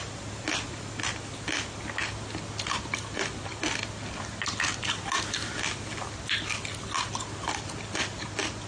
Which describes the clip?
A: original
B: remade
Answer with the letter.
A